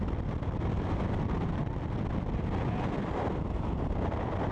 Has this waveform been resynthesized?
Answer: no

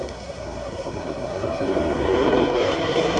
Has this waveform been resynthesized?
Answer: yes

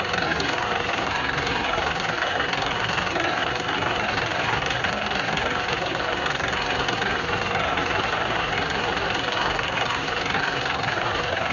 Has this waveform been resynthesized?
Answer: yes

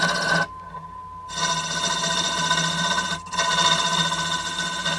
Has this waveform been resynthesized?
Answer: no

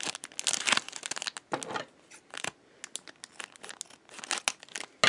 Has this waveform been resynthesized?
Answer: no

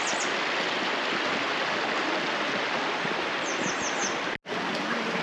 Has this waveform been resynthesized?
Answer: no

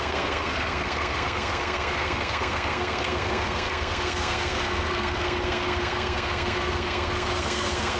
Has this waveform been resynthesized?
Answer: yes